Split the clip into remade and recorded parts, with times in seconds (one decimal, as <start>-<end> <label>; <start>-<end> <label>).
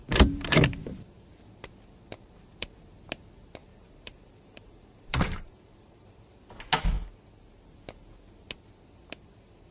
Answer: 0.0-1.6 remade; 1.6-2.1 recorded; 2.1-2.7 remade; 2.7-3.6 recorded; 3.6-6.5 remade; 6.5-9.7 recorded